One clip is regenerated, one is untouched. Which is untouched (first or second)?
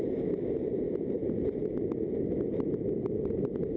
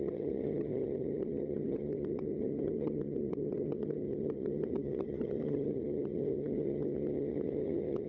first